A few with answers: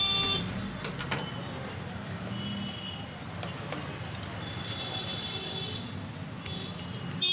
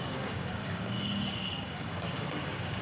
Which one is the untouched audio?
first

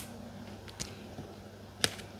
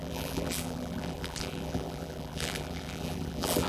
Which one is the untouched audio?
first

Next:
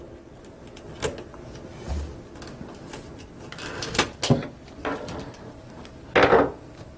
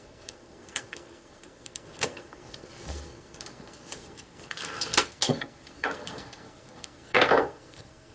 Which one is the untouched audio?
first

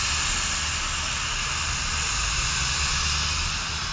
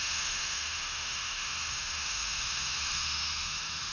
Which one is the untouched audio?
first